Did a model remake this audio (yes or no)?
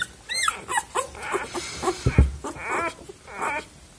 no